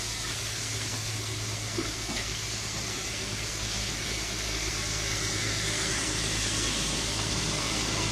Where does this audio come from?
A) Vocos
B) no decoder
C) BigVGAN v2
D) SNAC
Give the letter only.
D